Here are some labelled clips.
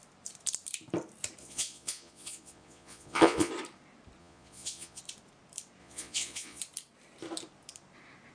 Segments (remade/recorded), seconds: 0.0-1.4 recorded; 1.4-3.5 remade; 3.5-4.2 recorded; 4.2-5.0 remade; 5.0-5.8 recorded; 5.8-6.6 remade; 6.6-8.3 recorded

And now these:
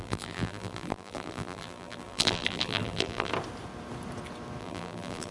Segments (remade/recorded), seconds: 0.0-3.3 remade; 3.3-4.6 recorded; 4.6-5.3 remade